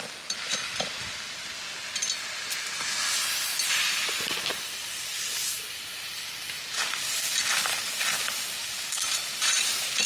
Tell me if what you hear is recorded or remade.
recorded